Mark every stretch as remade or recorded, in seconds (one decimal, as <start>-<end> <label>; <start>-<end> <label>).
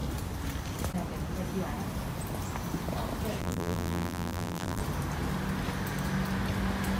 0.0-3.4 recorded; 3.4-4.8 remade; 4.8-7.0 recorded